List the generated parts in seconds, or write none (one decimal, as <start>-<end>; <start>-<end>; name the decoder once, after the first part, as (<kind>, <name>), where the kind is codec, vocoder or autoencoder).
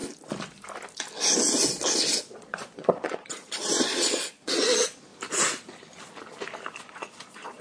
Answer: 2.1-5.1 (vocoder, Vocos); 6.8-7.6